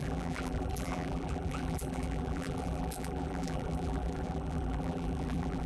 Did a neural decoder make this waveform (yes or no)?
yes